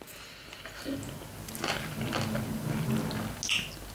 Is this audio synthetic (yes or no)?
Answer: no